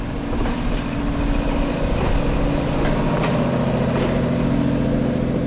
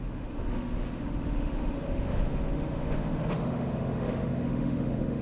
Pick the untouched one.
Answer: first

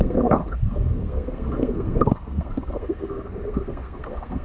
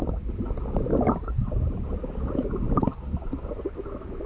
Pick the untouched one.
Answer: second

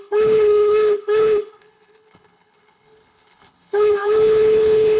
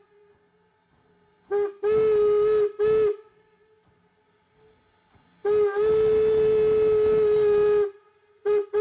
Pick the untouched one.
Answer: second